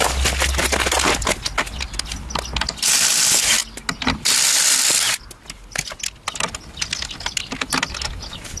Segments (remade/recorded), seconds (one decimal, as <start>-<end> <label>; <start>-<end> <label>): 0.0-8.6 recorded